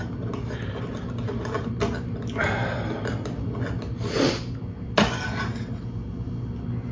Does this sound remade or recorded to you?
recorded